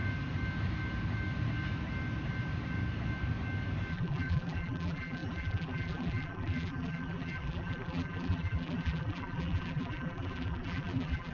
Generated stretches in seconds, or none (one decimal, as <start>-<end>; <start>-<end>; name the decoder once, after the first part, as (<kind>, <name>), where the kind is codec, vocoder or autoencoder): 3.9-11.3 (vocoder, BigVGAN v2)